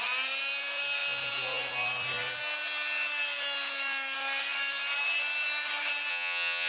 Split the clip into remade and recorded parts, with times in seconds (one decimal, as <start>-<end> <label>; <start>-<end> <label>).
0.0-6.1 recorded; 6.1-6.7 remade